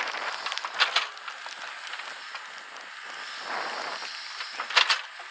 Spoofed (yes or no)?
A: no